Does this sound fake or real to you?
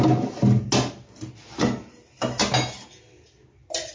real